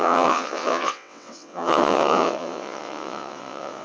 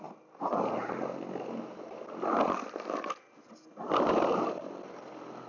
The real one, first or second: second